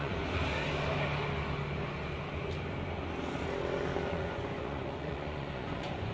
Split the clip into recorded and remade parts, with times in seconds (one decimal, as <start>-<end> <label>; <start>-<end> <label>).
0.0-0.4 remade; 0.4-4.1 recorded; 4.1-6.1 remade